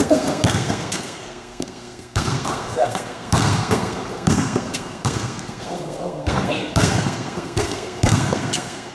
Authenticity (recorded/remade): remade